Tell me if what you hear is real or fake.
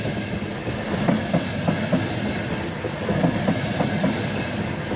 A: real